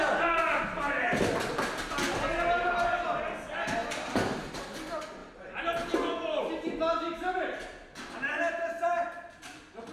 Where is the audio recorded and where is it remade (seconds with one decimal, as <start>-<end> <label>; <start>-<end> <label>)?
0.0-3.8 recorded; 3.8-4.6 remade; 4.6-9.9 recorded